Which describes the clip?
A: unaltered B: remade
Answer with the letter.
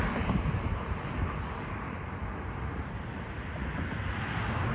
A